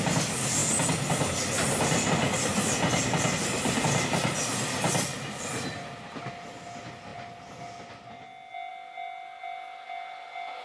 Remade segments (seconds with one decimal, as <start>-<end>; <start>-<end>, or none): none

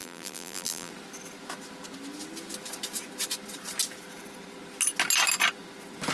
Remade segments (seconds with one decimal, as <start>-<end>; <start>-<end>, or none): 0.0-0.9

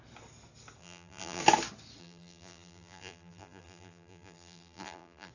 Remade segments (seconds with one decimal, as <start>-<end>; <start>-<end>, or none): 0.8-1.4; 2.0-5.3

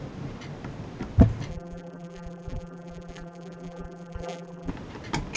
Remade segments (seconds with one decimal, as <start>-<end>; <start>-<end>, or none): 1.5-4.7

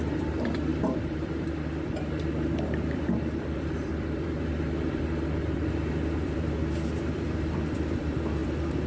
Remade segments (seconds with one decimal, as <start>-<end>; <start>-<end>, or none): 0.0-8.9

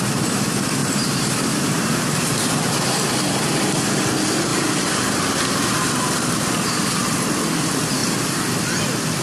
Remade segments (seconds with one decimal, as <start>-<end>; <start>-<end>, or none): 0.8-1.7; 4.5-5.4

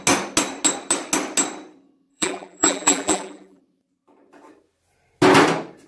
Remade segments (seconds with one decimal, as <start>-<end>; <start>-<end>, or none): 2.1-3.6